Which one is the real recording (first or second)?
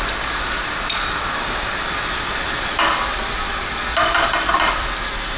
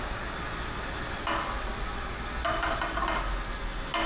second